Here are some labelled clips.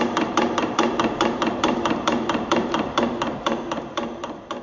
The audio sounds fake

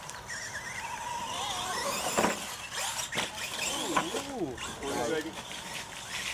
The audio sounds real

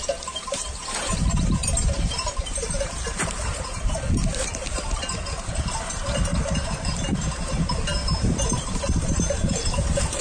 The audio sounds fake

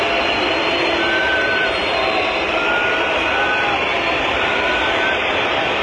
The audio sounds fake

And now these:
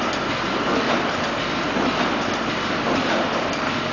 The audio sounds fake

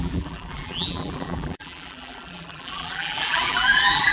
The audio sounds fake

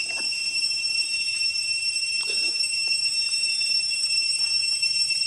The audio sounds fake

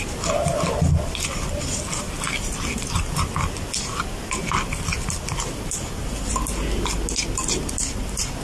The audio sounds real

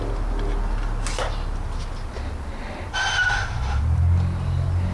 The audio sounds real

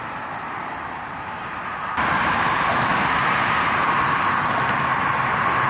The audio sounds fake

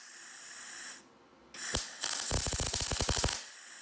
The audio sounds real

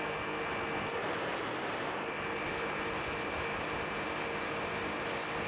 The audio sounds real